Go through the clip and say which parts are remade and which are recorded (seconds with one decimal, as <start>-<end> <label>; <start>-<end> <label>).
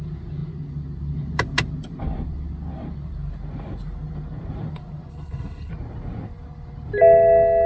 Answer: 0.0-5.1 recorded; 5.1-5.7 remade; 5.7-7.7 recorded